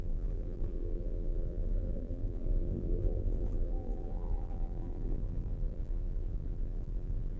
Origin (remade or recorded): remade